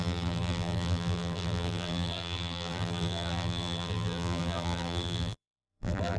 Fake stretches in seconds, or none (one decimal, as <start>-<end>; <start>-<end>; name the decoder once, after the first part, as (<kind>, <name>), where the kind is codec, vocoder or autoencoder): 0.0-6.2 (vocoder, BigVGAN v2)